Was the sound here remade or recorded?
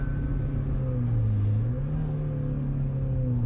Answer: recorded